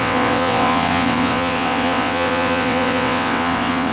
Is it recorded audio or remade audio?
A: remade